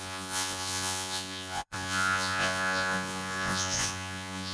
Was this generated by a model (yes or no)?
yes